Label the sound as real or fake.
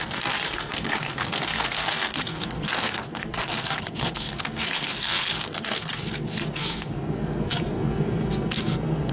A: fake